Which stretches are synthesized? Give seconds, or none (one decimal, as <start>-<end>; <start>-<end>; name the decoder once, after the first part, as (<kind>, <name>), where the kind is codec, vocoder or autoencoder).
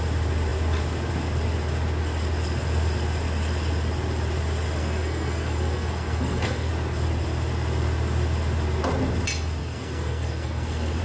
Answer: 4.8-6.7 (codec, SNAC); 9.6-11.0